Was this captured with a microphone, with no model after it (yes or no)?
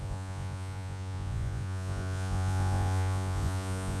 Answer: no